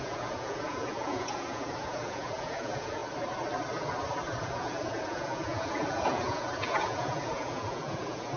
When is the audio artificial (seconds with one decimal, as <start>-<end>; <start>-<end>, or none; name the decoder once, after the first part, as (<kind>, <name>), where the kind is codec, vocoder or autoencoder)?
0.0-3.0 (vocoder, Vocos); 4.4-8.4